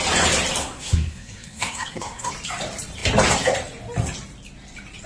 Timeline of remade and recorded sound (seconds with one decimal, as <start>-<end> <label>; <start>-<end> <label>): 0.0-0.6 recorded; 0.6-2.3 remade; 2.3-5.1 recorded